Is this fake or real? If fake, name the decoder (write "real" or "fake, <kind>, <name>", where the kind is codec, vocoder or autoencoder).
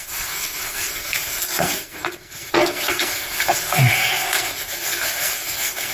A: fake, codec, SNAC